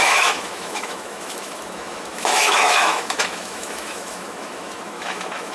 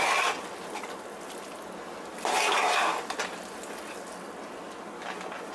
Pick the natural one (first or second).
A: second